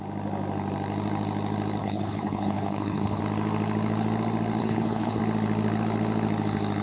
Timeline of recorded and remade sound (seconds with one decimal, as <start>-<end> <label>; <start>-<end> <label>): 0.0-1.8 recorded; 1.8-3.2 remade; 3.2-4.6 recorded; 4.6-5.2 remade; 5.2-6.8 recorded